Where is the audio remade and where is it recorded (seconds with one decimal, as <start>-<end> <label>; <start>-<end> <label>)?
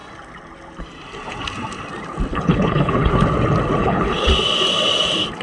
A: 0.0-2.3 recorded; 2.3-3.1 remade; 3.1-3.8 recorded; 3.8-4.3 remade; 4.3-5.4 recorded